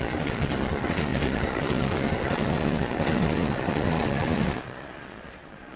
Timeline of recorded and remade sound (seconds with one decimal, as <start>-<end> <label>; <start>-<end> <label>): 0.0-5.8 remade